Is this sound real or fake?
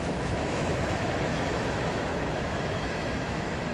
fake